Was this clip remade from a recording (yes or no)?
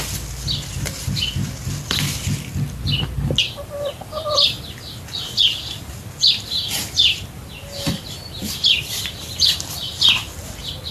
no